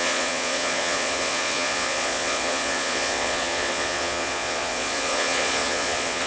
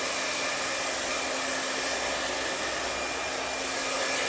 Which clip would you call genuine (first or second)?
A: second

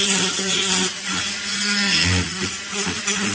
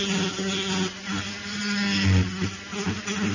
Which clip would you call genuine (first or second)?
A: second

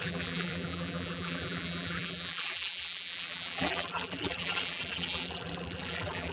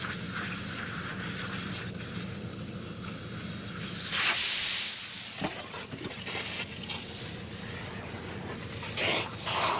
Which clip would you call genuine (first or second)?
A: second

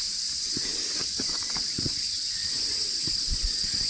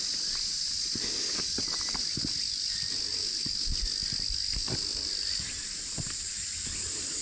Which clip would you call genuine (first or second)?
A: second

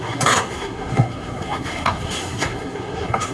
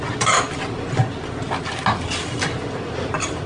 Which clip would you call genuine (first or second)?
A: second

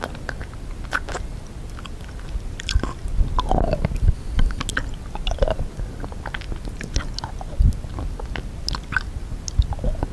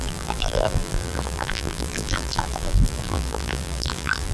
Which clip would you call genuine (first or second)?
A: first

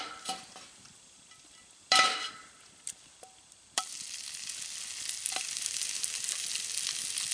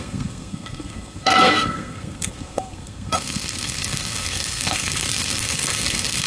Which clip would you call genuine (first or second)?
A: first